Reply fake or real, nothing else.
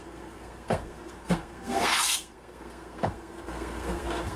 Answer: fake